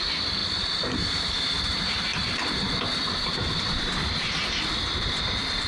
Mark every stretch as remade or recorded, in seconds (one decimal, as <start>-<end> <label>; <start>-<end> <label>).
0.0-5.7 recorded